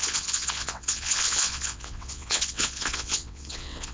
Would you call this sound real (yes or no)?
no